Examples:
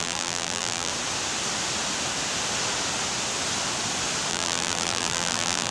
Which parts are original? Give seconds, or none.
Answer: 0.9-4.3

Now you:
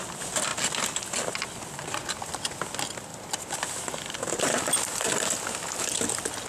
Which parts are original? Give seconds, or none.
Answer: 0.0-3.1; 5.1-6.5

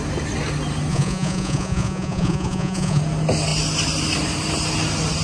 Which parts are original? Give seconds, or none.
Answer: 0.0-0.9; 3.0-5.2

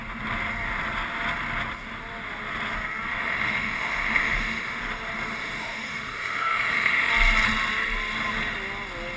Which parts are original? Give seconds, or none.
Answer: 0.0-3.1; 4.8-5.3; 7.1-9.2

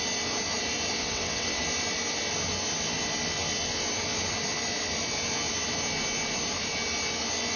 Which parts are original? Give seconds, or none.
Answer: 0.0-0.9; 1.6-7.6

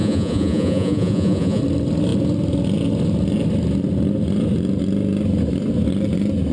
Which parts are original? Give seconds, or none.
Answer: 1.6-6.5

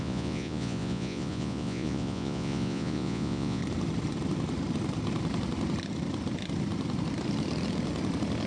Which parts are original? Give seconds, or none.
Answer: 3.6-8.5

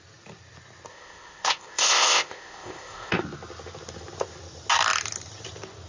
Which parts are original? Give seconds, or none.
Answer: 0.0-0.9; 3.2-5.9